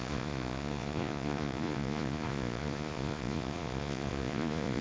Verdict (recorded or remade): remade